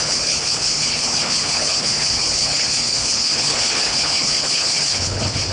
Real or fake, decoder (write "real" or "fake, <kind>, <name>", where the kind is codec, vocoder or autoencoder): fake, codec, HILCodec